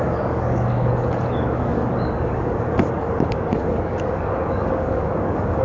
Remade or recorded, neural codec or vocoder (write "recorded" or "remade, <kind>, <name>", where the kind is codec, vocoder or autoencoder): remade, codec, DAC